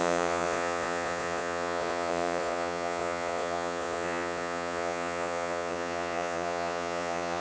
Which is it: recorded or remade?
remade